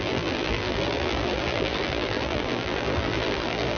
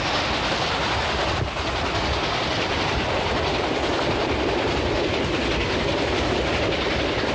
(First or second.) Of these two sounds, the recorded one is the second